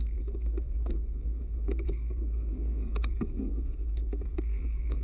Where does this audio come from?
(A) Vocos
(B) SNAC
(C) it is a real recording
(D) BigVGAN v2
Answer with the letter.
B